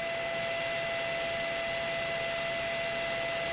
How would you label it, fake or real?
real